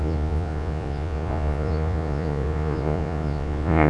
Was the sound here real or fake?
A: fake